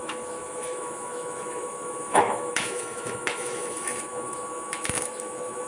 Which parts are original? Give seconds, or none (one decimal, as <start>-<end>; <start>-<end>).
none